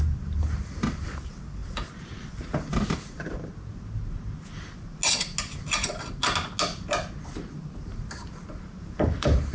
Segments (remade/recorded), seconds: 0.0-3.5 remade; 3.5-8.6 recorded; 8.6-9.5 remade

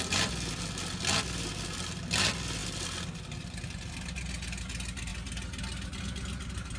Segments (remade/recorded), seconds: 0.0-6.8 recorded